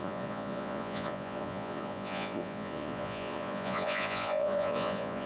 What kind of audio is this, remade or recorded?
remade